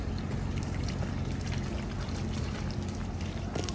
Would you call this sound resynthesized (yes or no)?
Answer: no